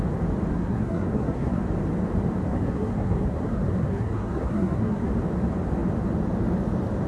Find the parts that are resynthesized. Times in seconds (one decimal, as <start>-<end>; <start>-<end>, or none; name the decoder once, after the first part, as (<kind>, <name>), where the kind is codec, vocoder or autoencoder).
0.5-1.6 (codec, SNAC); 2.5-5.1